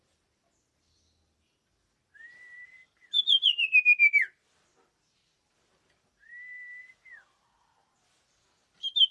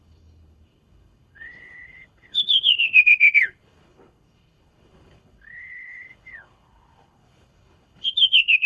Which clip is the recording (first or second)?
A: first